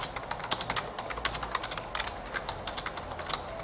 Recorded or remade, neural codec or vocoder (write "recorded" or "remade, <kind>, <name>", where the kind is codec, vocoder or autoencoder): recorded